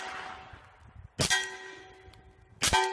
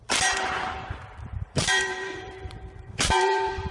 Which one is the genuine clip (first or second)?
first